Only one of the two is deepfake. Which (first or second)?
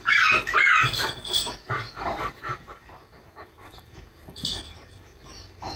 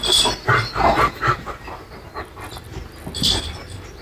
first